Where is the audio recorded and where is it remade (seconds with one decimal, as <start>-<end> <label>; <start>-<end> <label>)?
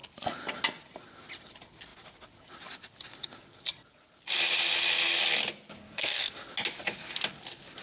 0.0-5.8 recorded; 5.8-6.3 remade; 6.3-7.8 recorded